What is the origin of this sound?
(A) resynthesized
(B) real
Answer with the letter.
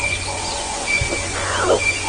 A